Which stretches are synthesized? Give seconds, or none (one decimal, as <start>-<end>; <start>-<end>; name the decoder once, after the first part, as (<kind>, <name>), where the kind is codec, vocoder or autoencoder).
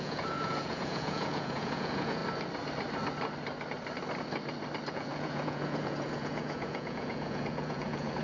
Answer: 0.0-2.2 (vocoder, Vocos); 4.9-8.2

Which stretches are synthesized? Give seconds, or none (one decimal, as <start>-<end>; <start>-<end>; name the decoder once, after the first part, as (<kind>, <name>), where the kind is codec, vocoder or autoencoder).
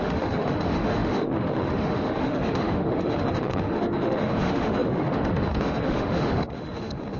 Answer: 0.0-7.2 (autoencoder, DAC-VAE)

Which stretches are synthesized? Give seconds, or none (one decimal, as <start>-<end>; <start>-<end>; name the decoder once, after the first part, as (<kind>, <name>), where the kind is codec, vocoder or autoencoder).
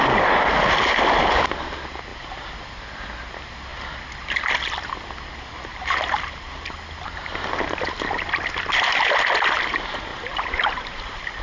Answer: 5.7-6.4 (vocoder, BigVGAN v2); 10.1-11.0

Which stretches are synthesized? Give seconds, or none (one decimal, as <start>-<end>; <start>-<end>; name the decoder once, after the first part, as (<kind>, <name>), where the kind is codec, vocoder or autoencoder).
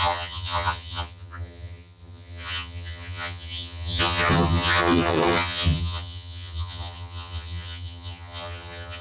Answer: 0.0-9.0 (vocoder, HiFi-GAN)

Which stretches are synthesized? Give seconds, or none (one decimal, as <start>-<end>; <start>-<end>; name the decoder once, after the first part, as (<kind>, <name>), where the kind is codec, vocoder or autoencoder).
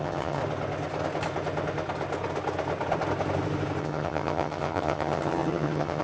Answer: 0.0-0.4 (vocoder, HiFi-GAN); 3.8-6.0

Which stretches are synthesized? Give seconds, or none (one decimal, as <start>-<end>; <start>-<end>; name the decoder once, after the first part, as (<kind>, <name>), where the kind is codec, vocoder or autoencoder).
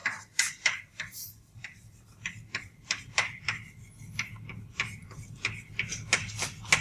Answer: 0.0-3.7 (vocoder, BigVGAN v2); 5.0-5.7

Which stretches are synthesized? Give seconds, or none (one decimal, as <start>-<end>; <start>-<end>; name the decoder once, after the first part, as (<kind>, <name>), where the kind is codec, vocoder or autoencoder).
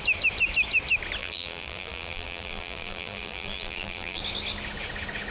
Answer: 1.2-4.2 (vocoder, BigVGAN v2)